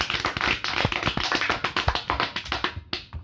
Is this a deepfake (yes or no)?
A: no